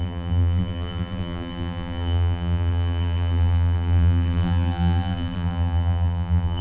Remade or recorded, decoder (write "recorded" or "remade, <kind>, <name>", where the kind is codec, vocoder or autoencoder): remade, vocoder, BigVGAN v2